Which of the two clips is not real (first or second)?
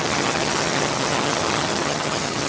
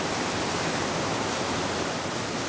first